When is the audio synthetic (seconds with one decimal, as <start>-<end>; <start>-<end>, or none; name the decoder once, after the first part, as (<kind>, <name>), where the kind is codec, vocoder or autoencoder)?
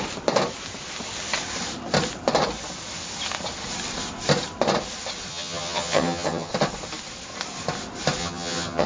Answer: 5.3-6.5 (vocoder, HiFi-GAN); 8.2-8.9